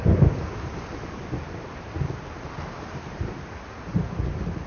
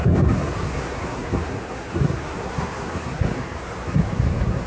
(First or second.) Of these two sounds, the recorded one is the first